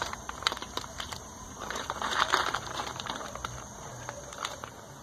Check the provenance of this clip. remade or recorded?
remade